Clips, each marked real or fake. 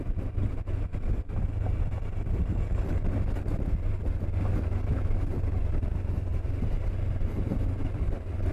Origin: real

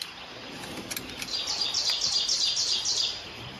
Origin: real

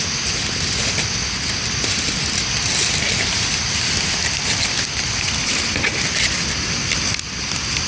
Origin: real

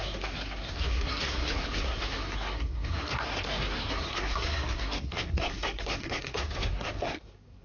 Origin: fake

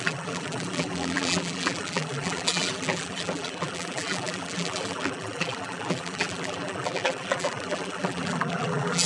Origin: fake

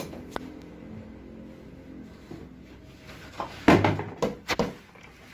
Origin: real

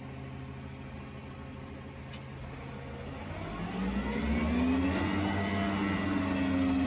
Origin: real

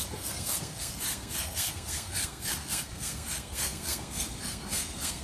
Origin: fake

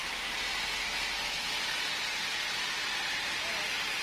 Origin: real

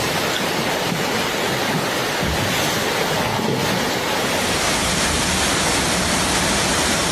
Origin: real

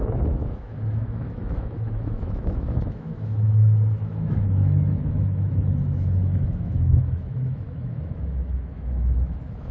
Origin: fake